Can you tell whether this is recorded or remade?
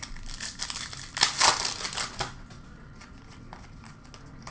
recorded